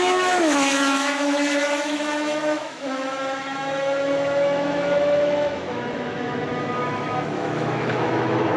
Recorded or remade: remade